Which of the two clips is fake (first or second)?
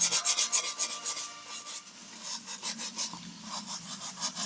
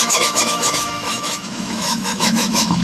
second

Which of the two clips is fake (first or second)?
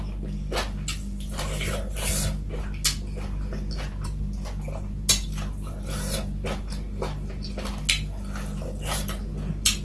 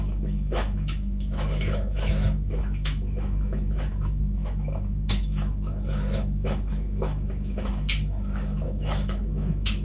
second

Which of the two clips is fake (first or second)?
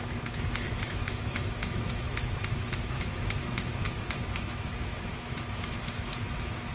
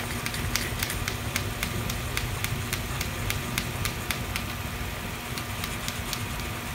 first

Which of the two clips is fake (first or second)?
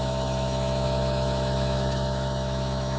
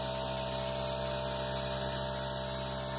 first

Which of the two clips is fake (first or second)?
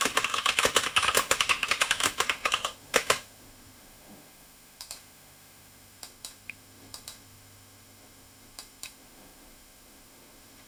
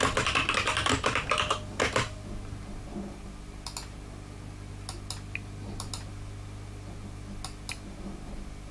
first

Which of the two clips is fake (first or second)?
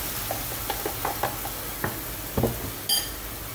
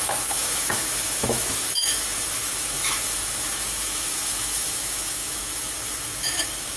second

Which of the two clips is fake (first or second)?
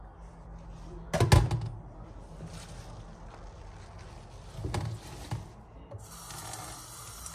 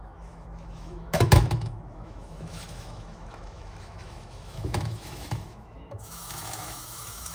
second